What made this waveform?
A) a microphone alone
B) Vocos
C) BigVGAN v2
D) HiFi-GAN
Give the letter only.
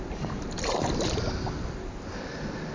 A